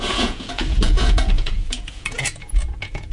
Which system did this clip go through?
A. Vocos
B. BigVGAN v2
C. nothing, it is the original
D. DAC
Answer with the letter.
A